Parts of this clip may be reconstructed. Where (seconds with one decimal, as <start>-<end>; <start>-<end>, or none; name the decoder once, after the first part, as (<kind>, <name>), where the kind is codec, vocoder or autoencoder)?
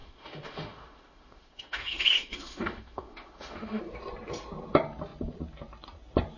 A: 0.0-3.8 (autoencoder, DAC-VAE)